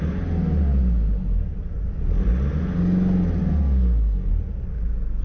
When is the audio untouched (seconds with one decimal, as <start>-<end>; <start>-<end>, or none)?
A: 0.0-3.4; 4.3-5.2